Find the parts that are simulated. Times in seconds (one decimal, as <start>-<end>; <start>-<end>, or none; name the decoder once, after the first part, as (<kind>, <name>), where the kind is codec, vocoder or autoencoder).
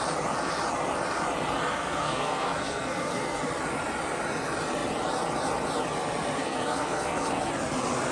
1.8-3.5 (codec, SNAC); 6.4-7.5